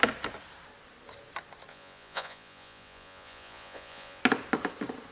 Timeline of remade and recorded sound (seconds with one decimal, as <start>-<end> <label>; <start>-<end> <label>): 0.0-1.7 recorded; 1.7-4.2 remade; 4.2-5.1 recorded